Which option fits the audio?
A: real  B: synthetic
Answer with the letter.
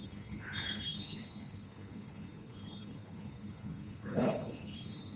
B